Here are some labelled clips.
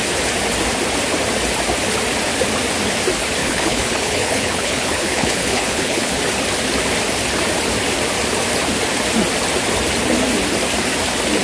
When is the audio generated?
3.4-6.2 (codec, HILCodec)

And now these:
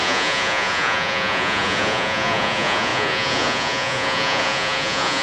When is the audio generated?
0.0-5.2 (vocoder, Vocos)

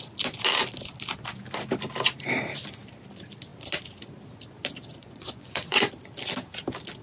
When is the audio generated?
5.0-5.9 (vocoder, Vocos)

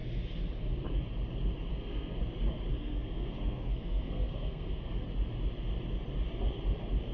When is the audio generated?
1.7-2.2 (codec, SNAC); 2.7-5.0

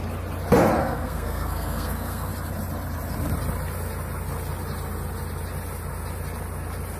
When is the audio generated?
0.8-2.3 (codec, SNAC)

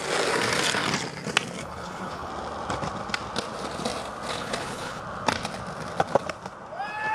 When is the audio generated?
1.6-2.3 (codec, HILCodec); 4.3-5.0

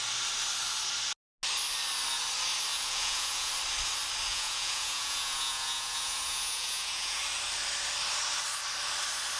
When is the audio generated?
2.7-3.5 (vocoder, Vocos); 4.3-7.2

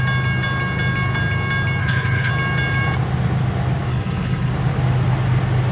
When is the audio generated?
1.8-2.3 (codec, HILCodec); 3.9-4.5